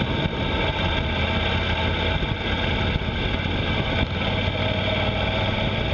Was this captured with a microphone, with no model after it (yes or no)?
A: yes